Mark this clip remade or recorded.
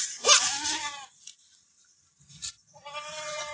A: remade